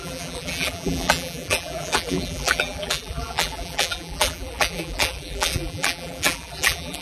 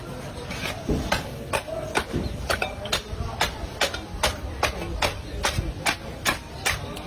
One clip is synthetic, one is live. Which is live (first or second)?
second